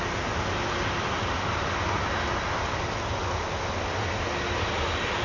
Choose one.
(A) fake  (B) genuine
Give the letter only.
B